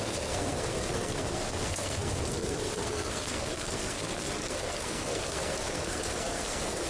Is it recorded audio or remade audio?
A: remade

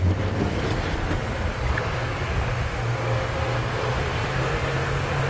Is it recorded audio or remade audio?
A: recorded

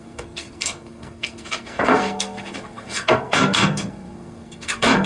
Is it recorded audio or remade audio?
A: remade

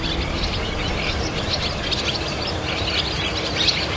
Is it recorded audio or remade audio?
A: recorded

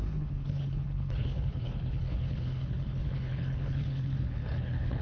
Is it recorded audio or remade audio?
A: remade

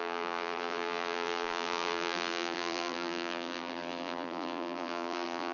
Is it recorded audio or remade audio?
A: remade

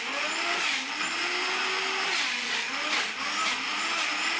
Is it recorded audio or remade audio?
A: recorded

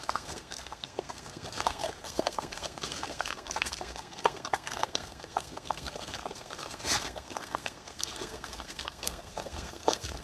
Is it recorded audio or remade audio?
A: remade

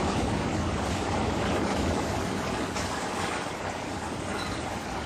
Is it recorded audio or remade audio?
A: remade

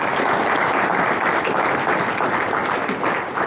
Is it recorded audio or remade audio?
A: recorded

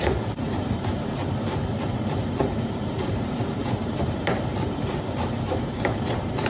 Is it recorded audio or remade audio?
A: remade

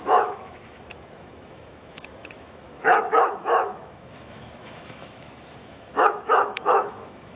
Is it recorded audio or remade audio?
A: remade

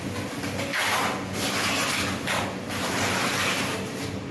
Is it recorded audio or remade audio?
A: recorded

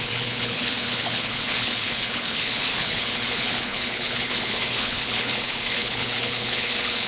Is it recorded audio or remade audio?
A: remade